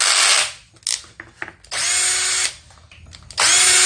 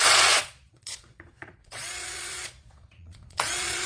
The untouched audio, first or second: first